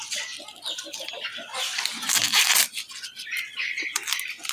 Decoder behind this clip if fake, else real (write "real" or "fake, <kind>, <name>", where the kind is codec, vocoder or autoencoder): real